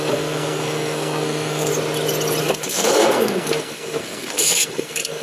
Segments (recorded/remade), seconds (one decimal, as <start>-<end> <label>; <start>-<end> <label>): 0.0-1.7 remade; 1.7-2.4 recorded; 2.4-5.2 remade